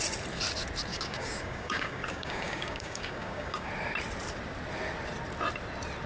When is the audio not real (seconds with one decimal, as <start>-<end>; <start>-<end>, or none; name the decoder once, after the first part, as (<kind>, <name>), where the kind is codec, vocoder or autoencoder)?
0.9-3.7 (codec, DAC)